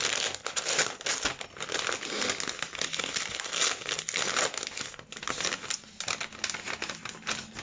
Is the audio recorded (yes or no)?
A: yes